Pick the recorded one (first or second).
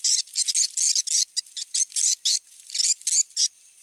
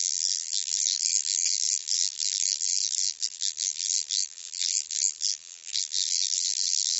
first